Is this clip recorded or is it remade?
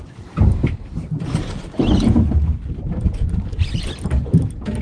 recorded